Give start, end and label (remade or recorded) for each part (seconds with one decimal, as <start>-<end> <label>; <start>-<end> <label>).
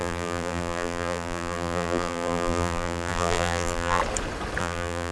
0.0-4.0 remade; 4.0-4.6 recorded; 4.6-5.1 remade